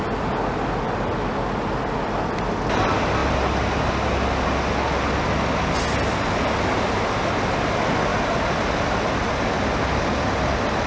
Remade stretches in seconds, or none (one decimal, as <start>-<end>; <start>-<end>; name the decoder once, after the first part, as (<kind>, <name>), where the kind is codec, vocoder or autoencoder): none